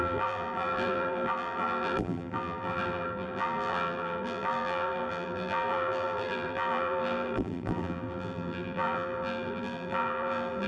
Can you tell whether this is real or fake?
fake